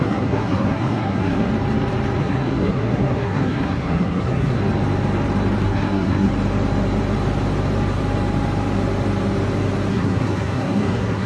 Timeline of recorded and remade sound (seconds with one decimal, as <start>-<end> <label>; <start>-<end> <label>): 0.0-1.5 remade; 1.5-2.2 recorded; 2.2-4.6 remade; 4.6-5.6 recorded; 5.6-6.3 remade; 6.3-9.9 recorded; 9.9-11.3 remade